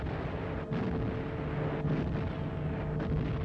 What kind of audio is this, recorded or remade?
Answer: recorded